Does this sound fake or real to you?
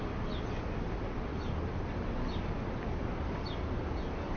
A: real